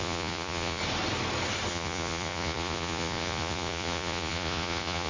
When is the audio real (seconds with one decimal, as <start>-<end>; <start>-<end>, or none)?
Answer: 0.8-1.7